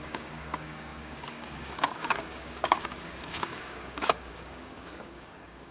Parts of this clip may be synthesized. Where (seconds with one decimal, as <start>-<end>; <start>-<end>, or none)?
0.0-5.7